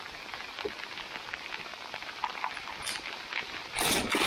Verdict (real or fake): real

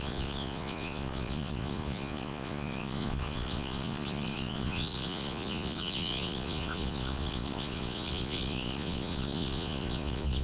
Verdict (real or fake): fake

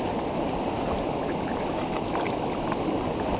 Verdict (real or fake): real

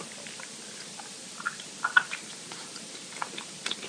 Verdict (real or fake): real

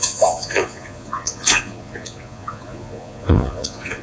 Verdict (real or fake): fake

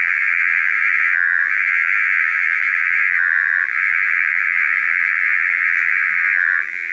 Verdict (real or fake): fake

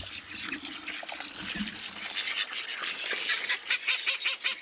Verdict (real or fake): real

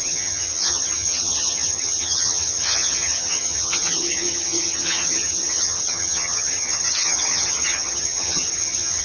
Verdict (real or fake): fake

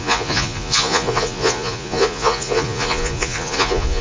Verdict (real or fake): fake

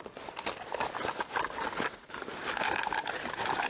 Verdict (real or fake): real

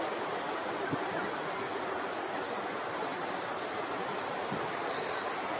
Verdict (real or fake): real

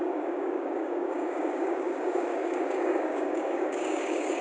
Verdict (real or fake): fake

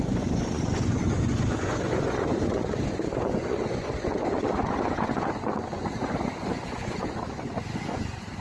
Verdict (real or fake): fake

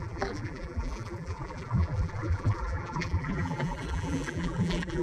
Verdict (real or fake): fake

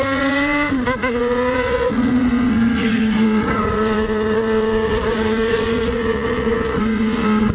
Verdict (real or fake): fake